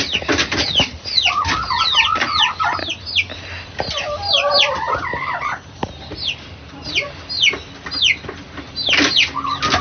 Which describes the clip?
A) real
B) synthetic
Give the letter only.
A